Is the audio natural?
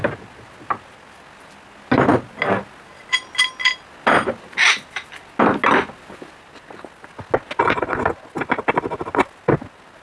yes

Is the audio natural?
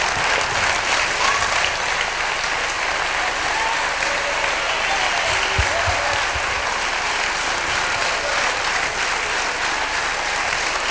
yes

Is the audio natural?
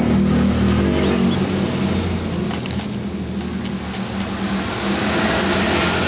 yes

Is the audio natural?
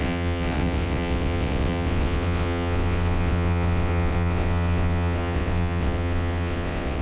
no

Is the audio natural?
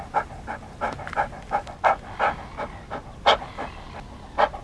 yes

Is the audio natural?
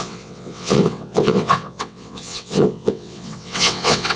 no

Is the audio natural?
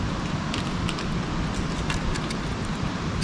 yes